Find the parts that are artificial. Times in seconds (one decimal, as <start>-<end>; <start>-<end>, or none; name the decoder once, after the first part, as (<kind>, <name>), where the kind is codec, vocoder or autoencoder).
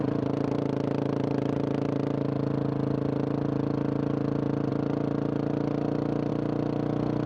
none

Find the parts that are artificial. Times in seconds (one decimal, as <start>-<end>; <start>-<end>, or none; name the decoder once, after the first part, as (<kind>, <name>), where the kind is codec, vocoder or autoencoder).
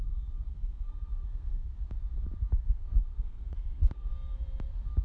0.0-1.7 (codec, SNAC); 2.6-4.1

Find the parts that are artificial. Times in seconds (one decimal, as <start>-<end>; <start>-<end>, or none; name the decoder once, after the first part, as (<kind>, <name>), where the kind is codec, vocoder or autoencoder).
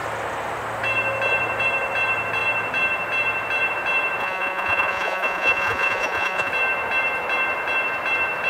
4.2-6.5 (vocoder, Vocos)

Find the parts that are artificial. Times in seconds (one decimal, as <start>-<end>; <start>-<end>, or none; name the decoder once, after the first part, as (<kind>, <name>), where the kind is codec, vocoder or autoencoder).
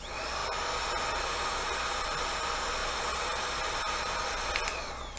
2.8-4.2 (vocoder, BigVGAN v2)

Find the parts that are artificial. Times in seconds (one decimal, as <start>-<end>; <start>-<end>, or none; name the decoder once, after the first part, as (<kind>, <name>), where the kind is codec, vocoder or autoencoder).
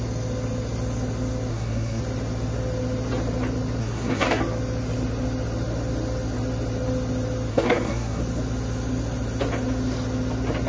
1.5-2.0 (codec, SNAC); 3.8-4.4; 7.5-8.2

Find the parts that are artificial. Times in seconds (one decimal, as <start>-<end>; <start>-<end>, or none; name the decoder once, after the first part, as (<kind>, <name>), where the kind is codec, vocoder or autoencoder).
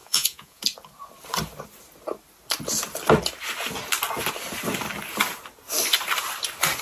0.0-0.6 (vocoder, Vocos)